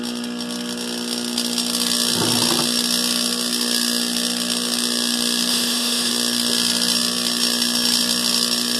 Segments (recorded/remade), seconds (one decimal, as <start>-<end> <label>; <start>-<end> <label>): 0.0-5.5 recorded; 5.5-6.1 remade; 6.1-8.8 recorded